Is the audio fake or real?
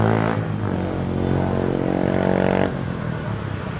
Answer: real